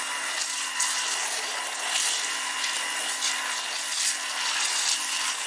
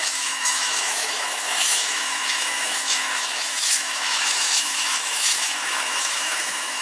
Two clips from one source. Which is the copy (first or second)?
second